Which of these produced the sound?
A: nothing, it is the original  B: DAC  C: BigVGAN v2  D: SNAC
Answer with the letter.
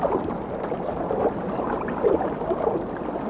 A